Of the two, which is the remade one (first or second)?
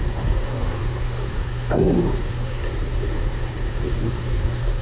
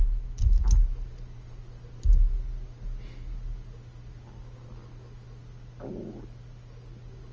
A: first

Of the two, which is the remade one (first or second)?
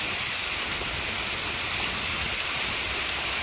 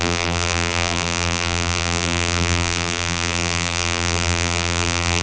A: second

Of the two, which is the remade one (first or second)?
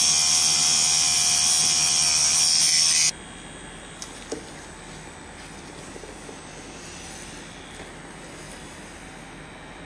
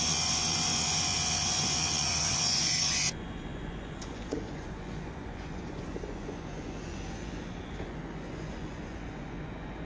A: second